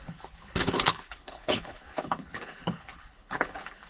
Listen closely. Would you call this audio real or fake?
fake